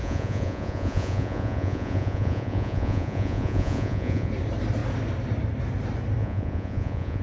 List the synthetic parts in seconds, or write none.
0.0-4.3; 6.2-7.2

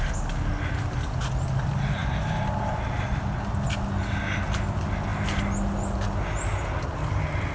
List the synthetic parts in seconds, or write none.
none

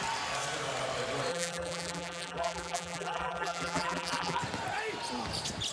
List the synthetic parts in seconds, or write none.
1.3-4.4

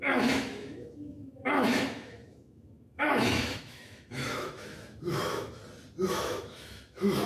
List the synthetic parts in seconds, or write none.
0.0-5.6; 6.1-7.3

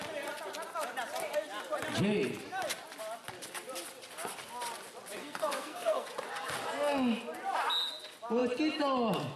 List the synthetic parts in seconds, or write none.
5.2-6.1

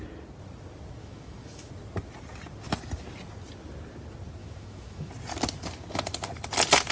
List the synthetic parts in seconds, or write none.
1.0-1.7; 4.4-5.1